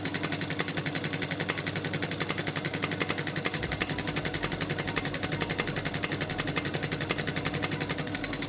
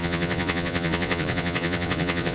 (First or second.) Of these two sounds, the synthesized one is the second